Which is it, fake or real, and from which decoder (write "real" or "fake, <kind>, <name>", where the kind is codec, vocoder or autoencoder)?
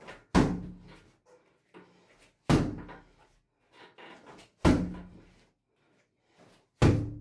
real